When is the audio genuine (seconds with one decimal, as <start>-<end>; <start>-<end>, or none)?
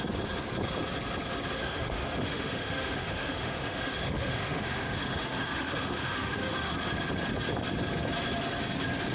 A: 0.0-1.6; 6.7-9.1